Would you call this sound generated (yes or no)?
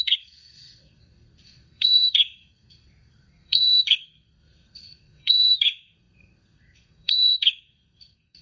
yes